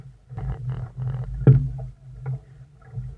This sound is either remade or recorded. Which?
recorded